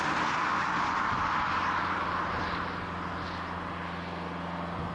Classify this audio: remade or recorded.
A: recorded